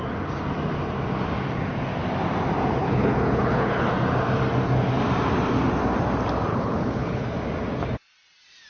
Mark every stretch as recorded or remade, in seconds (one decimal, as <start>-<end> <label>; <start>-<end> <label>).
0.0-2.8 recorded; 2.8-3.9 remade; 3.9-6.5 recorded; 6.5-7.3 remade; 7.3-8.7 recorded

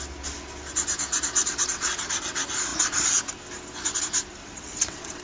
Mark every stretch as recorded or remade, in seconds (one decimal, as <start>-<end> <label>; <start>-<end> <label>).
0.0-1.4 recorded; 1.4-2.3 remade; 2.3-4.4 recorded; 4.4-5.2 remade

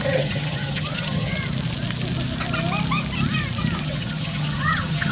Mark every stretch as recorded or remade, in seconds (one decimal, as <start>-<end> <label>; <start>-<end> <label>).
0.0-1.3 remade; 1.3-3.8 recorded; 3.8-5.1 remade

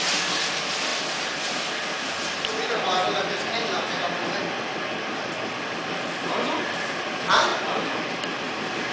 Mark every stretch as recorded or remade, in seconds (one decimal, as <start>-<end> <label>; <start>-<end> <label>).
0.0-8.9 recorded